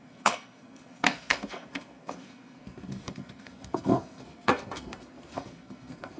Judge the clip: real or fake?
fake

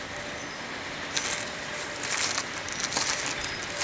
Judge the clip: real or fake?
real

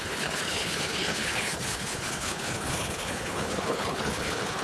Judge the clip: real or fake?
fake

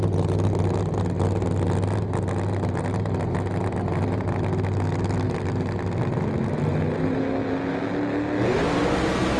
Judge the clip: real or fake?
real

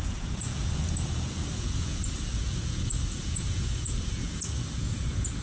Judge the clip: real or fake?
fake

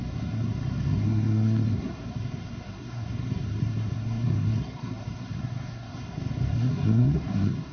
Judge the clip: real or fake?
fake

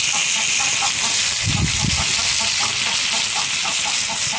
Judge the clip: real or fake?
real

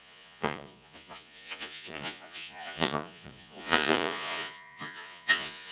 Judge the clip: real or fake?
fake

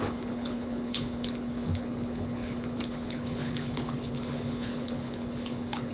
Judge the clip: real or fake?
fake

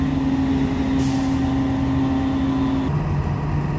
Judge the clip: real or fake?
real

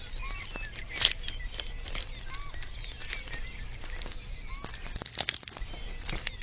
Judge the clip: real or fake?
real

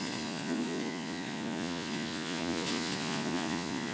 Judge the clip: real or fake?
fake